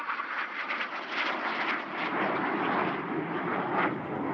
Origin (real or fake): real